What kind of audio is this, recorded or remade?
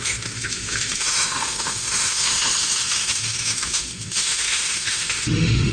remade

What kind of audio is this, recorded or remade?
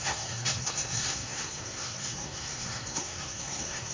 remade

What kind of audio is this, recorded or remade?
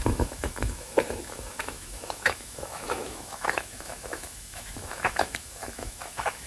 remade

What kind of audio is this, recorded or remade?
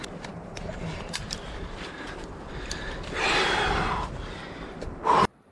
remade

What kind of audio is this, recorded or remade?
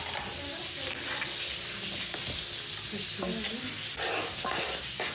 recorded